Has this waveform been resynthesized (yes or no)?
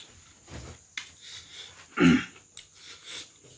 no